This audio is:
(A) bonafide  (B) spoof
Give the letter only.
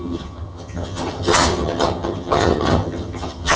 B